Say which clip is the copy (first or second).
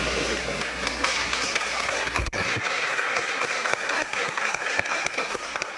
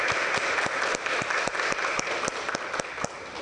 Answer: first